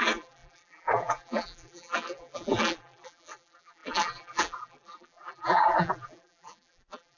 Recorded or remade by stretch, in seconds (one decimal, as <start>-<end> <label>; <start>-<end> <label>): 0.0-7.2 remade